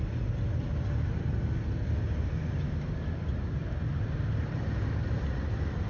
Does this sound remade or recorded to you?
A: recorded